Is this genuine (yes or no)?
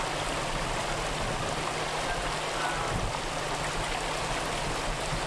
yes